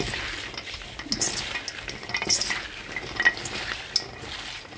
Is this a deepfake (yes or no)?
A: no